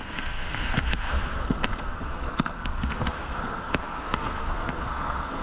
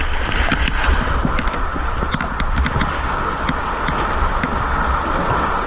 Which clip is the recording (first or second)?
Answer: second